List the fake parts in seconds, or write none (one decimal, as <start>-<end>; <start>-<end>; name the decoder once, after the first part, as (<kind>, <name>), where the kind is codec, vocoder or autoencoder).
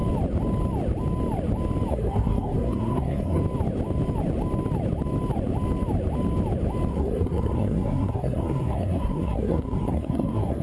1.9-3.4 (codec, SNAC); 6.9-10.6